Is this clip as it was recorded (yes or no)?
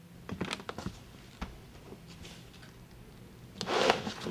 yes